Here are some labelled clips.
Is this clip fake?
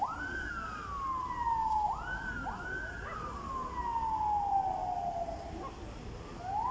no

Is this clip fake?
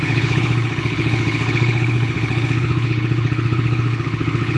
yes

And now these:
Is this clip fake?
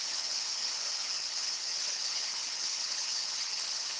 yes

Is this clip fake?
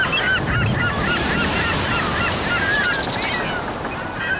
no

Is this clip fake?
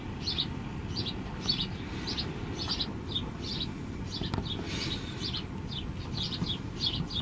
no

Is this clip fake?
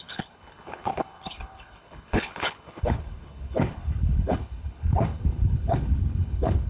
yes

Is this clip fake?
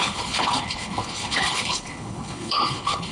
yes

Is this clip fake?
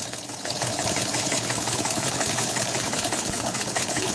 yes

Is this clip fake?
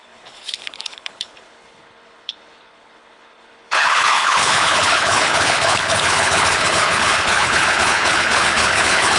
yes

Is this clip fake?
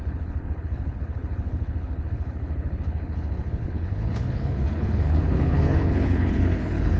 yes